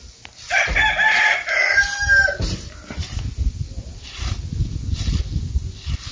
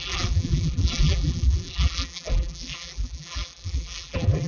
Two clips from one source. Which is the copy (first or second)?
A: second